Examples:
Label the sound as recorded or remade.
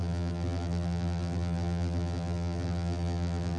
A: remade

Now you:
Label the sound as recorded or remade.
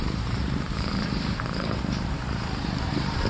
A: remade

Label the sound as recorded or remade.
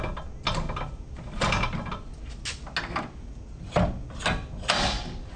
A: recorded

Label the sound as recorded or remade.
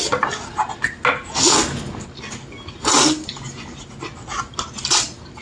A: recorded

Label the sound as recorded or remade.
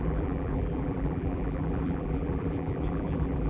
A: remade